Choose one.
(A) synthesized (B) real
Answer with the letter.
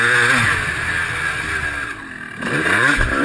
B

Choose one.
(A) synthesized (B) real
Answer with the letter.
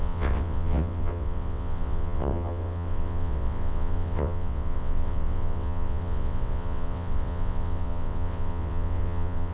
A